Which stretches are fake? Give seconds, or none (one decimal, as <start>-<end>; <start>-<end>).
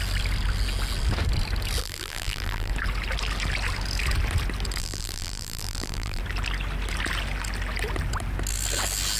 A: 1.8-2.7; 4.8-6.2